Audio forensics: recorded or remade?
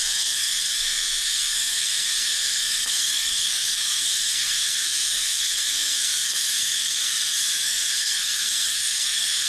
remade